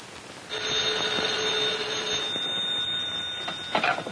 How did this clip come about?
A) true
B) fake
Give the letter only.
A